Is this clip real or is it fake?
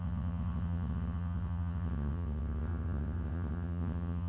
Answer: fake